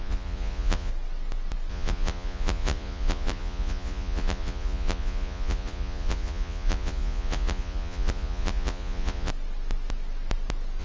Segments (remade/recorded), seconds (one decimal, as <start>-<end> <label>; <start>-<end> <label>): 0.0-0.9 remade; 0.9-1.7 recorded; 1.7-9.3 remade; 9.3-10.8 recorded